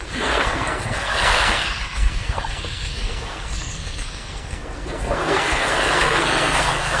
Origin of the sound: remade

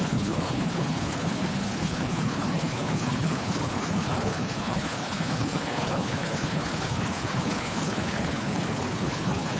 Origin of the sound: remade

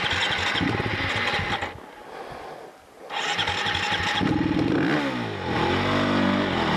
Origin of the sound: recorded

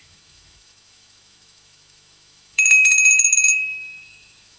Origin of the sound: remade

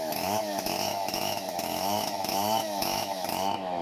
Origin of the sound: remade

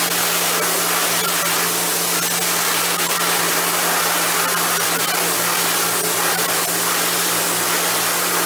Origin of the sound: recorded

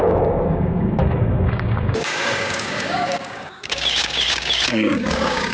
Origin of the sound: remade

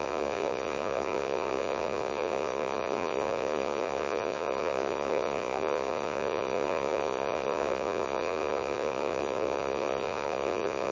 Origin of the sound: remade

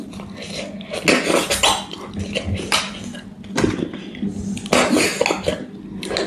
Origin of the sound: recorded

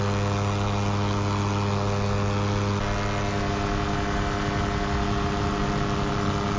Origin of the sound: recorded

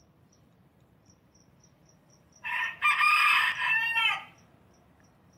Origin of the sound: remade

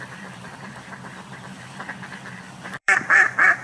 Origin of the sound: remade